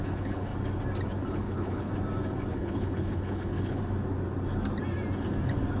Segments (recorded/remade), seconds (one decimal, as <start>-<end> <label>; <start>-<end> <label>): 0.0-0.5 remade; 0.5-1.3 recorded; 1.3-1.9 remade; 1.9-2.5 recorded; 2.5-3.8 remade; 3.8-5.8 recorded